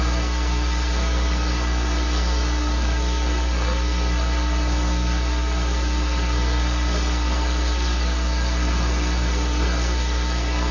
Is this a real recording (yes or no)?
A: no